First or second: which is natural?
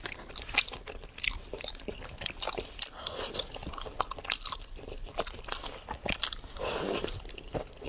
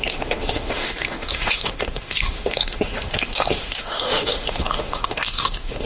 first